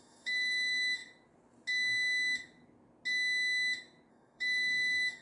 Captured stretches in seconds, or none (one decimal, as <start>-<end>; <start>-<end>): 1.0-4.1